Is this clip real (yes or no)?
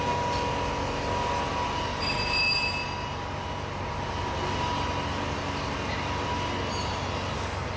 yes